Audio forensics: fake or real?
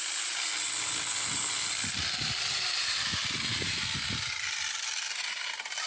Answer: real